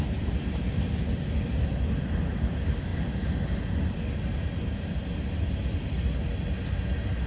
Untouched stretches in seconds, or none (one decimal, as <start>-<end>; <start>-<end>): 0.0-7.3